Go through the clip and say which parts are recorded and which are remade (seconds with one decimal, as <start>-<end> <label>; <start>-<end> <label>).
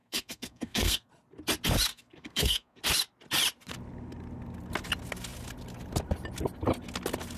0.0-1.1 remade; 1.1-1.9 recorded; 1.9-2.8 remade; 2.8-7.4 recorded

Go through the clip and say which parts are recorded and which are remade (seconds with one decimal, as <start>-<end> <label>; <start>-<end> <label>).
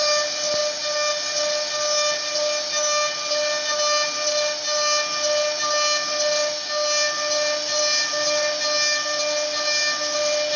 0.0-10.6 recorded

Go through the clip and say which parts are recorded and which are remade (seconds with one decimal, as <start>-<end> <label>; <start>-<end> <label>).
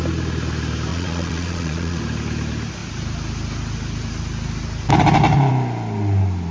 0.0-0.9 recorded; 0.9-2.0 remade; 2.0-6.5 recorded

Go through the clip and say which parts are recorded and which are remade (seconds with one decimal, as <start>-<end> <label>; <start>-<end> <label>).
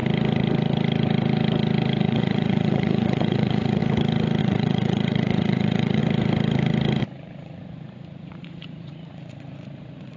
0.0-2.0 recorded; 2.0-3.8 remade; 3.8-4.4 recorded; 4.4-6.0 remade; 6.0-7.0 recorded; 7.0-10.2 remade